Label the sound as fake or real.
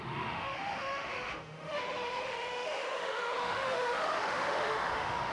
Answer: fake